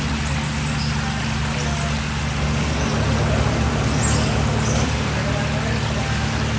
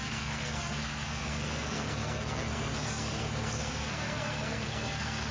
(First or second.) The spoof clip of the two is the second